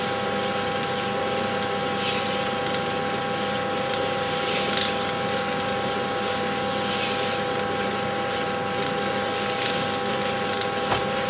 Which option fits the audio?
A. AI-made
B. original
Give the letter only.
B